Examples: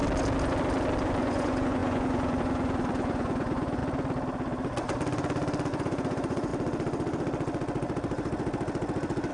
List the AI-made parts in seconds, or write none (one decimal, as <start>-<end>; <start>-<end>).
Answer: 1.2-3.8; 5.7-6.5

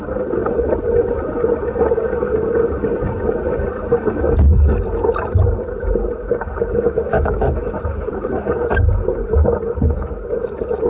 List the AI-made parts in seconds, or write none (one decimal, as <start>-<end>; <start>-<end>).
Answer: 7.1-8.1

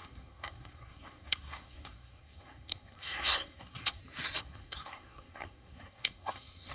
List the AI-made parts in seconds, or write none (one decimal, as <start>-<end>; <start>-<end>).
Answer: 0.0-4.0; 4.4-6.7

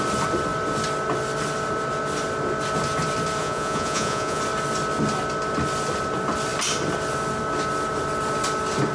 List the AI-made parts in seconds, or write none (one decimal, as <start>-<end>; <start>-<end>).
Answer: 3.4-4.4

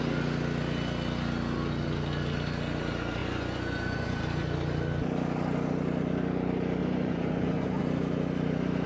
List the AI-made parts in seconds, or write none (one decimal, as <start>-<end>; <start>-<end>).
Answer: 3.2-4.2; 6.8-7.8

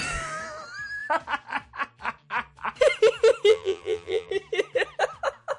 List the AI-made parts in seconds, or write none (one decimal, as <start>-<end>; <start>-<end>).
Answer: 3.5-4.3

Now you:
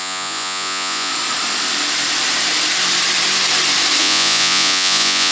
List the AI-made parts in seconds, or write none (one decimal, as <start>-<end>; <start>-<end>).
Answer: 0.0-1.1; 4.0-5.3

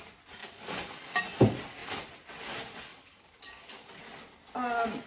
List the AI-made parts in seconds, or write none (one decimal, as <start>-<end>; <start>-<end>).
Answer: 0.4-1.2; 2.9-3.9